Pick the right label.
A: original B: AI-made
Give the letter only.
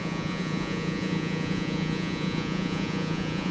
B